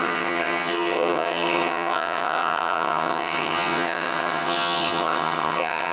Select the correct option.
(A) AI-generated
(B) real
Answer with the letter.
A